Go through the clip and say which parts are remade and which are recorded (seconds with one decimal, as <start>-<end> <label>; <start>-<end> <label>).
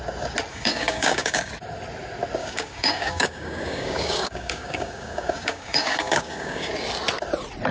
0.0-0.5 recorded; 0.5-1.5 remade; 1.5-2.4 recorded; 2.4-6.7 remade; 6.7-7.7 recorded